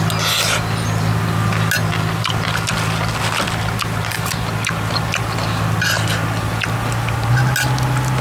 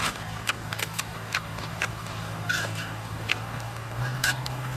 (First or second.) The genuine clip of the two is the first